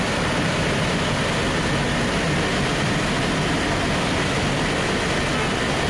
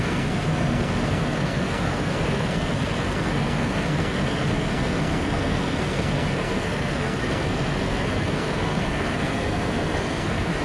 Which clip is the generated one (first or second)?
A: second